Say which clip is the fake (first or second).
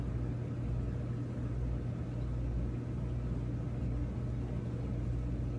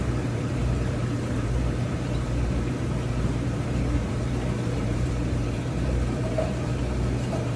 second